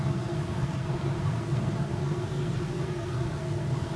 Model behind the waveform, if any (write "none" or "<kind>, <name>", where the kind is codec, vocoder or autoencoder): codec, SNAC